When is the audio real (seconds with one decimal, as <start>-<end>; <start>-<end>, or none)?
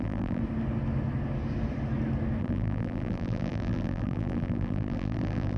0.4-2.4